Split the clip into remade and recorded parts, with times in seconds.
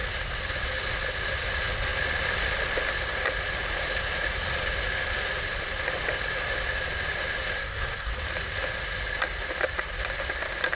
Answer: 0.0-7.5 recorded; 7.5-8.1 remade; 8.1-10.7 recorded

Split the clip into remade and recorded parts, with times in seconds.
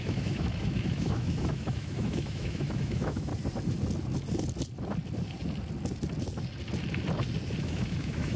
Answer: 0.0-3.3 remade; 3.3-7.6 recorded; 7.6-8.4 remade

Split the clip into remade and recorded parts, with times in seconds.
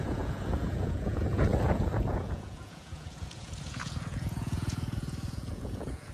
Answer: 0.0-6.1 remade